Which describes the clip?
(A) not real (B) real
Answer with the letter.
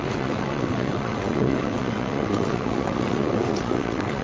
A